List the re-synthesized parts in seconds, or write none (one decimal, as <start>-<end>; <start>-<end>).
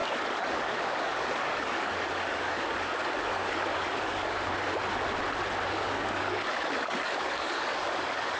0.0-4.8; 5.7-8.4